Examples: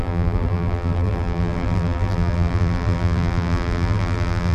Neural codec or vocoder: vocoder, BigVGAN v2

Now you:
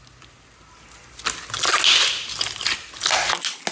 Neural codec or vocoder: none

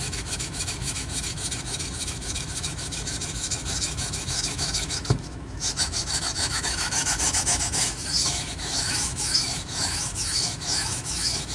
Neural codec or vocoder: autoencoder, DAC-VAE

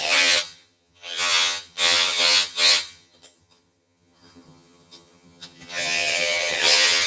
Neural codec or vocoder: vocoder, HiFi-GAN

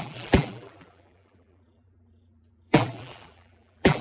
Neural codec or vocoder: vocoder, BigVGAN v2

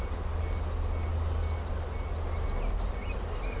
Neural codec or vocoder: none